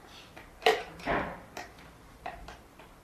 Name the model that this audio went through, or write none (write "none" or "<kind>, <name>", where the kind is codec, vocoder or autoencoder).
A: none